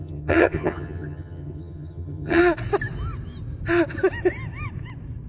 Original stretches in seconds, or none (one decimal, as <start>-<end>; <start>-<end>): 2.4-5.3